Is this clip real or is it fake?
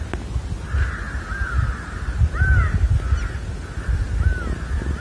real